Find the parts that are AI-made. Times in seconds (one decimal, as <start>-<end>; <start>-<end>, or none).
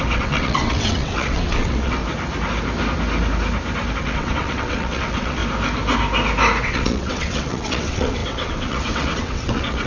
0.0-2.0; 4.0-5.4; 6.6-9.9